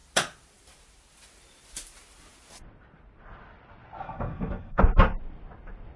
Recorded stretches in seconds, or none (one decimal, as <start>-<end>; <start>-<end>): 0.0-4.0; 4.8-6.0